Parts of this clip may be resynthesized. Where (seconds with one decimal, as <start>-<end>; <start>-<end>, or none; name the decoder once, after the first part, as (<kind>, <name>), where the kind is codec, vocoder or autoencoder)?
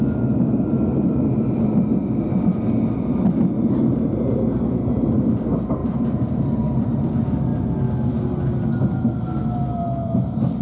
5.8-7.0 (vocoder, BigVGAN v2)